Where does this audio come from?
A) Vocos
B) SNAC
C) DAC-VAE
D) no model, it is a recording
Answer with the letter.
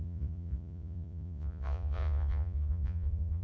A